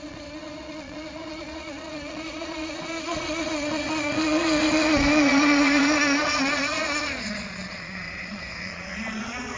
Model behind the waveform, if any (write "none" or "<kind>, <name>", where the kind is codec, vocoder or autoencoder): vocoder, Vocos